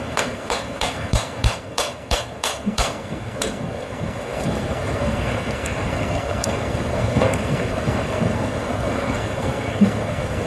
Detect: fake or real fake